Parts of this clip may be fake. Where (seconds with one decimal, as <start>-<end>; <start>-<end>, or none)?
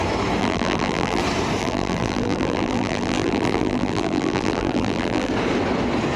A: 0.4-1.2; 1.6-5.3